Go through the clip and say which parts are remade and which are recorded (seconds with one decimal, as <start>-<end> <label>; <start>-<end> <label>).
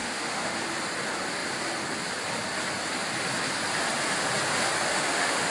0.0-0.5 remade; 0.5-4.9 recorded; 4.9-5.5 remade